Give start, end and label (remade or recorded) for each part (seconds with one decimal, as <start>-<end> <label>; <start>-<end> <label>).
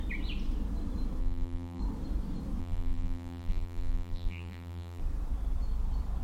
0.0-1.2 recorded; 1.2-1.8 remade; 1.8-2.6 recorded; 2.6-5.0 remade; 5.0-6.2 recorded